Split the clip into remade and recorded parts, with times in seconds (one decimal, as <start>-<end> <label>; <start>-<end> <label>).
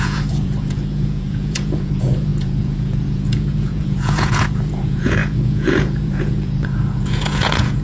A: 0.0-7.8 remade